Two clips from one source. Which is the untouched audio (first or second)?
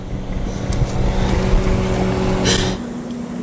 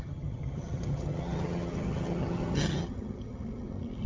first